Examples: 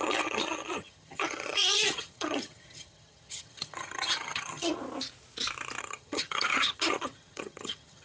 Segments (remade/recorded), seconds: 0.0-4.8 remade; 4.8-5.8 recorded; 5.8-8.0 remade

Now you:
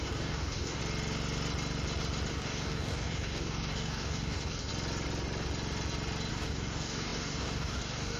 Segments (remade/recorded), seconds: 0.0-0.8 remade; 0.8-2.3 recorded; 2.3-4.7 remade; 4.7-6.3 recorded; 6.3-8.2 remade

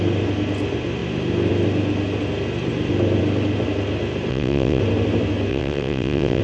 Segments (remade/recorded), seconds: 0.0-4.3 recorded; 4.3-4.8 remade; 4.8-5.5 recorded; 5.5-6.4 remade

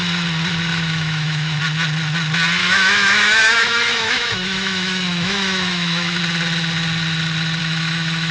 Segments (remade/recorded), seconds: 0.0-0.7 recorded; 0.7-1.6 remade; 1.6-2.6 recorded; 2.6-6.2 remade; 6.2-7.6 recorded; 7.6-8.3 remade